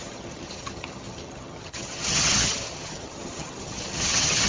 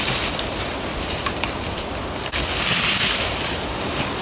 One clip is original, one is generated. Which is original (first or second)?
second